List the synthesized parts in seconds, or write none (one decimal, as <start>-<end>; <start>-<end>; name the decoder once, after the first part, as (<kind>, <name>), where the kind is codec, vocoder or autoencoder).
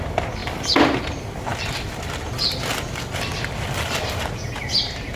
0.0-0.4 (vocoder, BigVGAN v2); 1.0-5.2